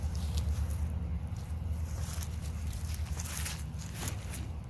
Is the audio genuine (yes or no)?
yes